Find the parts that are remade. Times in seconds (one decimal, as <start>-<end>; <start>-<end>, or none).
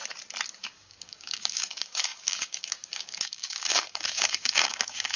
0.6-5.2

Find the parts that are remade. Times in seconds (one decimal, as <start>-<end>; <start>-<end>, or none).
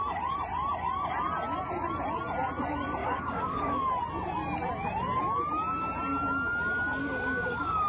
3.0-3.8; 7.0-7.9